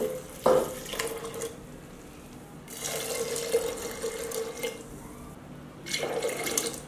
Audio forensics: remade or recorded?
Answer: recorded